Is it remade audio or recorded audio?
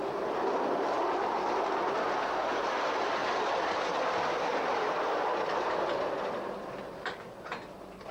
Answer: recorded